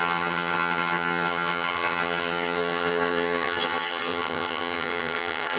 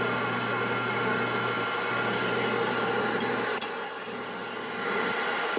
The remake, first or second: first